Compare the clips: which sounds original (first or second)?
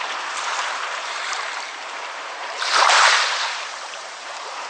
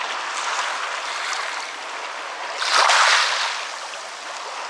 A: second